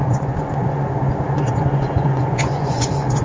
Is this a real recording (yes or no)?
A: no